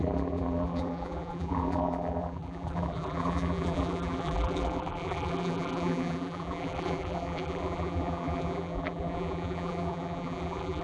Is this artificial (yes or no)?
yes